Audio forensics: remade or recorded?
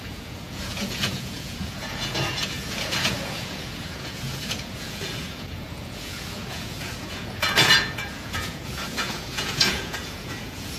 remade